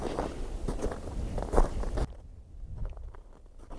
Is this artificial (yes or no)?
no